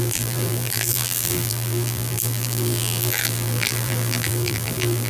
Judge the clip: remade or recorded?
remade